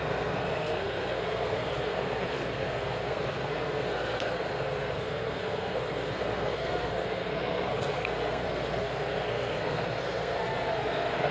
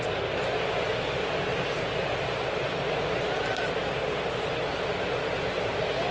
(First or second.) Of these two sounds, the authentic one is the second